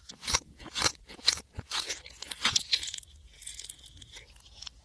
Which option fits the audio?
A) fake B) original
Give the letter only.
A